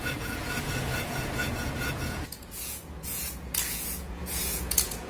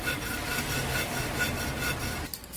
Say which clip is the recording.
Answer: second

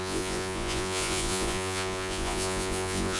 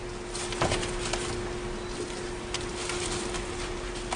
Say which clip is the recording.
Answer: second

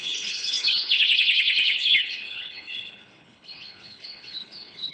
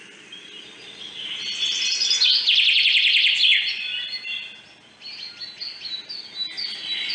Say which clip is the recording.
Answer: second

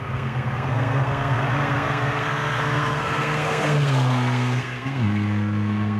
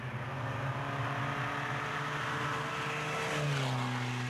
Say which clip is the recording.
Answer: second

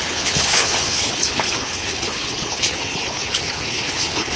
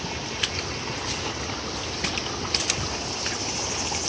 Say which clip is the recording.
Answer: second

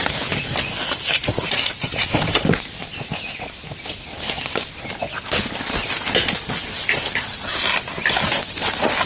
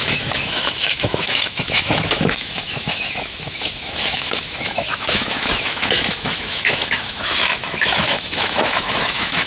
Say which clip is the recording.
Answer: first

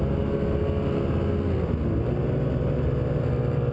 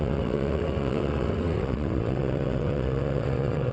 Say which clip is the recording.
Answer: first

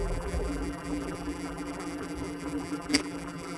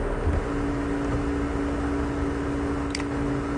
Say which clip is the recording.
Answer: second